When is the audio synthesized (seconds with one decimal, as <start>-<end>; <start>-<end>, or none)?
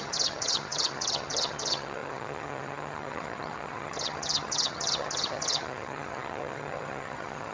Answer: 0.0-7.5